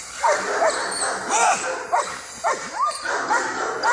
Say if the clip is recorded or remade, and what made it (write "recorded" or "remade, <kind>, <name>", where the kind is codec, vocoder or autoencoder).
recorded